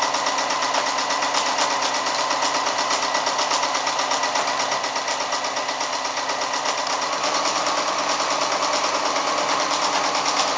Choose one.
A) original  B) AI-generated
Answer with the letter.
A